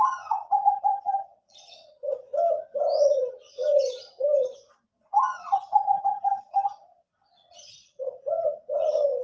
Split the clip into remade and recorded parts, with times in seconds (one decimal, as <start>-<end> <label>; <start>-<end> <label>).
0.0-2.3 remade; 2.3-3.0 recorded; 3.0-9.2 remade

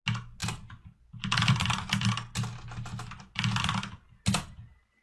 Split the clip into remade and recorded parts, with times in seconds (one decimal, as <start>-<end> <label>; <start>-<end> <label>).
0.0-5.0 recorded

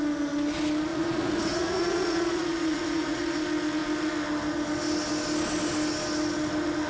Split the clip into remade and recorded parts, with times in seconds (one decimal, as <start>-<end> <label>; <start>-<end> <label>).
0.0-0.9 recorded; 0.9-3.4 remade; 3.4-6.9 recorded

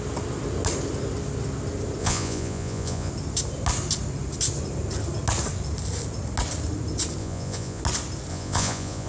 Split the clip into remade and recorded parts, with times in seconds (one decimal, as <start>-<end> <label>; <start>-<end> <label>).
0.0-2.0 recorded; 2.0-3.1 remade; 3.1-7.2 recorded; 7.2-7.8 remade; 7.8-8.3 recorded; 8.3-9.1 remade

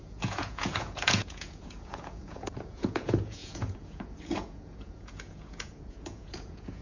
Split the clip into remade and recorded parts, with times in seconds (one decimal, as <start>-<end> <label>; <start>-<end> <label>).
0.0-6.8 remade

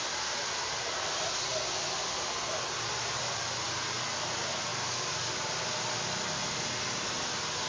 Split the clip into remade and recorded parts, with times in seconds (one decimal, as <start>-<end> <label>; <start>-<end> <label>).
0.0-7.7 recorded